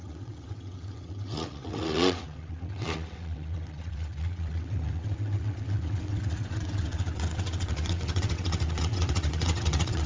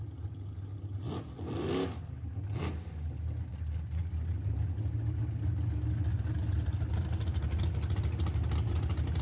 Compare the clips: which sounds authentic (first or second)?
second